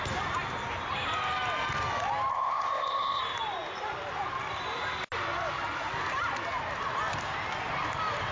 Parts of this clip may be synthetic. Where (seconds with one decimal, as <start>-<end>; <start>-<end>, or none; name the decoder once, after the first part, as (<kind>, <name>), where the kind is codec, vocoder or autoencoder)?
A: 2.3-3.2 (codec, ZipCodec)